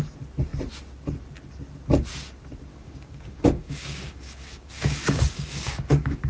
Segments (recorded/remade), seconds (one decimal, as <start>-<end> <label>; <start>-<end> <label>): 0.0-2.7 recorded; 2.7-6.3 remade